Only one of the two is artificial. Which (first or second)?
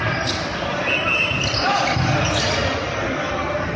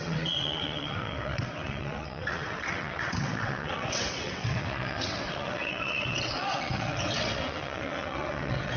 second